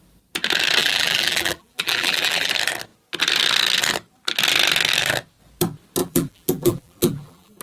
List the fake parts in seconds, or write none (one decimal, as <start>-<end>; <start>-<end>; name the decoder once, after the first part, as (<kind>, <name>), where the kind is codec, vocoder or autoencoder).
0.8-2.5 (vocoder, BigVGAN v2); 6.0-7.6